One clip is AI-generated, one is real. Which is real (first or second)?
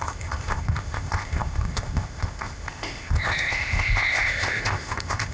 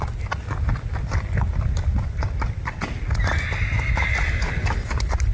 second